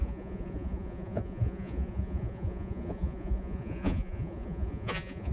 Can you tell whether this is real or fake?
fake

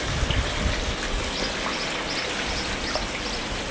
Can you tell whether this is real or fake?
real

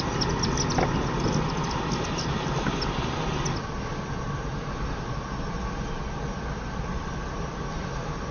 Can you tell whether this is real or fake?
real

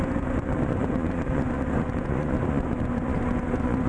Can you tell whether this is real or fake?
fake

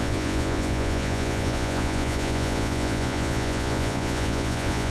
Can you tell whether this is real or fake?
fake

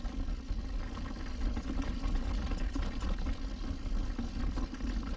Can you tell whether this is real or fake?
real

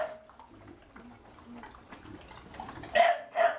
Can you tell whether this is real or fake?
real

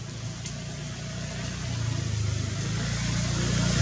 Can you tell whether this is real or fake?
real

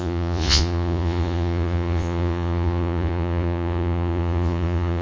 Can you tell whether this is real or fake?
fake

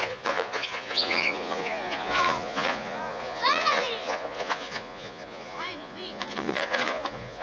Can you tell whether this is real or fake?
fake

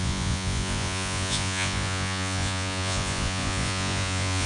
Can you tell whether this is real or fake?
fake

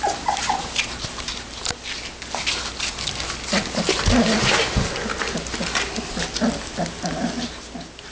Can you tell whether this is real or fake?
real